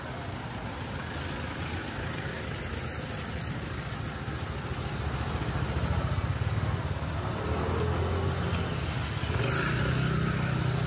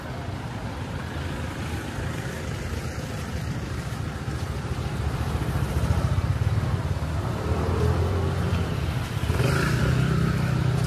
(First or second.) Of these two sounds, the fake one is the second